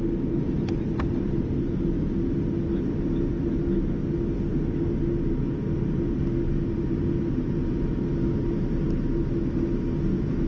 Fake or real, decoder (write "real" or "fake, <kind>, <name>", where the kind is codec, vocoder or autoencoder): real